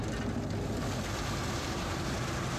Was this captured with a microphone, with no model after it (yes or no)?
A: yes